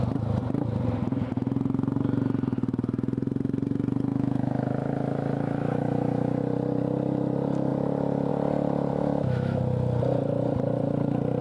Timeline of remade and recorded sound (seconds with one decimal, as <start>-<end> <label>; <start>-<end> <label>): 0.0-4.1 recorded; 4.1-6.4 remade; 6.4-8.9 recorded; 8.9-9.6 remade; 9.6-11.4 recorded